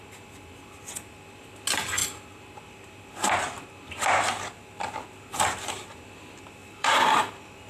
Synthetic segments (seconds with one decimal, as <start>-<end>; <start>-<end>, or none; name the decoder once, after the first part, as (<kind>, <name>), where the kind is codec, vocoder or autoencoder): 6.6-7.3 (vocoder, BigVGAN v2)